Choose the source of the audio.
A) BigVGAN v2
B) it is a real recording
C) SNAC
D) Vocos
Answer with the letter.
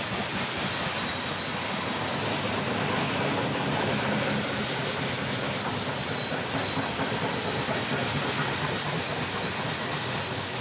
B